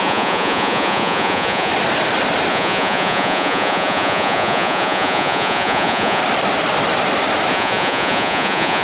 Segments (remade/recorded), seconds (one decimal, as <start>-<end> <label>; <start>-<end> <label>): 0.0-1.7 remade; 1.7-2.5 recorded; 2.5-6.2 remade; 6.2-7.5 recorded; 7.5-8.8 remade